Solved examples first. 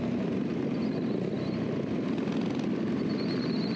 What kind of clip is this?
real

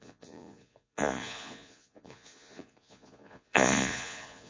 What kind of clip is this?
fake